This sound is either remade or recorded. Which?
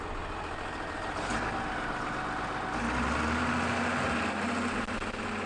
recorded